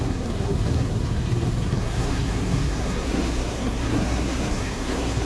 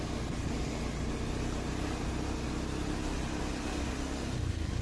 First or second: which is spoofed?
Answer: first